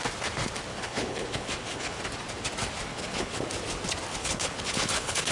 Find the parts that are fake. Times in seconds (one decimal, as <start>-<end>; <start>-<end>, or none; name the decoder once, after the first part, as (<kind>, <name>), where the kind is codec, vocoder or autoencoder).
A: 0.7-2.0 (codec, HILCodec); 2.9-3.5; 4.1-5.3